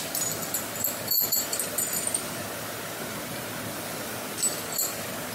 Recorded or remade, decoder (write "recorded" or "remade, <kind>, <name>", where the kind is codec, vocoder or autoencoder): recorded